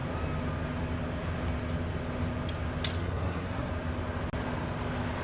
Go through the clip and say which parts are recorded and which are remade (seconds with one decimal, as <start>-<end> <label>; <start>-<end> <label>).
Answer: 0.0-3.0 recorded; 3.0-3.7 remade; 3.7-5.2 recorded